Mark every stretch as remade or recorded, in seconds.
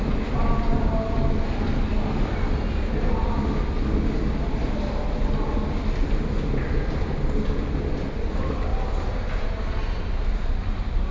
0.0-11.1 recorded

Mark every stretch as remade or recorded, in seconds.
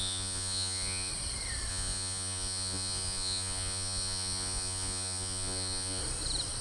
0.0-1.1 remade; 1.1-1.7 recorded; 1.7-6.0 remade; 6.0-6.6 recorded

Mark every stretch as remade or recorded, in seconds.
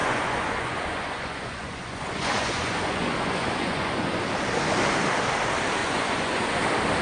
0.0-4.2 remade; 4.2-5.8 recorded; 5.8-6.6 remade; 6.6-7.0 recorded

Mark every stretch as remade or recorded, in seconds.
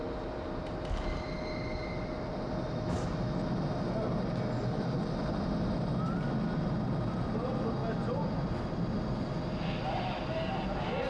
0.0-11.1 recorded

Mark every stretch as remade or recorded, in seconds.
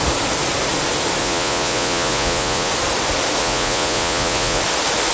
0.0-1.2 recorded; 1.2-2.7 remade; 2.7-3.4 recorded; 3.4-4.6 remade; 4.6-5.1 recorded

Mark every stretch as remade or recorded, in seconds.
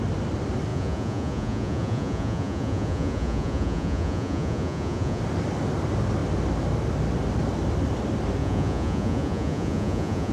0.0-0.7 recorded; 0.7-5.2 remade; 5.2-8.4 recorded; 8.4-10.3 remade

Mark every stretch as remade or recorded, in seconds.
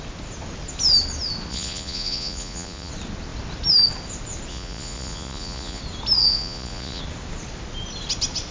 0.0-1.5 recorded; 1.5-2.9 remade; 2.9-4.5 recorded; 4.5-5.8 remade; 5.8-6.2 recorded; 6.2-7.0 remade; 7.0-8.5 recorded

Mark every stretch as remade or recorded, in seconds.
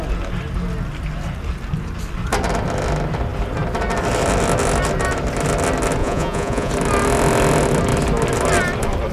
0.0-6.0 recorded; 6.0-6.7 remade; 6.7-9.1 recorded